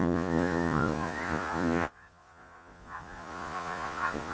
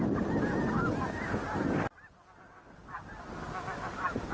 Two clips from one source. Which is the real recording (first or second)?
second